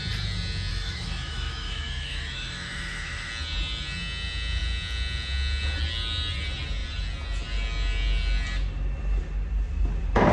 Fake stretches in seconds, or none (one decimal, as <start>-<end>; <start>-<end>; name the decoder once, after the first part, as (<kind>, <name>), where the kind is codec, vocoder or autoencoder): 0.7-3.3 (autoencoder, DAC-VAE)